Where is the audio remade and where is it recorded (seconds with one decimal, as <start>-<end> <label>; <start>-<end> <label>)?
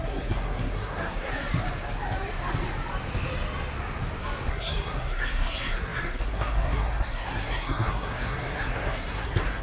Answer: 0.0-1.3 remade; 1.3-4.5 recorded; 4.5-9.6 remade